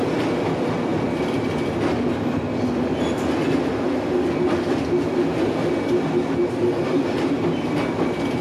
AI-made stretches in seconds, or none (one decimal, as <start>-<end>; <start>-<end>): none